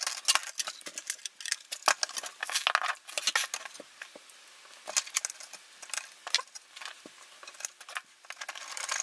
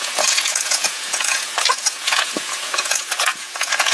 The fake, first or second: second